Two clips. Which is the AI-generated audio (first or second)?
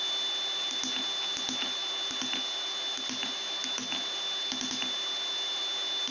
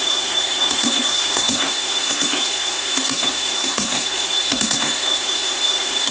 second